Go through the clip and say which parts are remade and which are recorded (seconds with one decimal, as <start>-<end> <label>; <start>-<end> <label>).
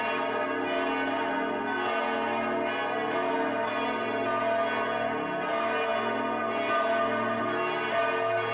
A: 0.0-8.5 recorded